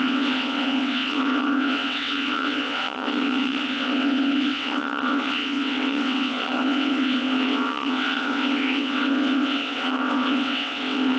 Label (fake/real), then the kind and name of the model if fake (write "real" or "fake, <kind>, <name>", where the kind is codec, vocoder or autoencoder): fake, vocoder, WaveNeXt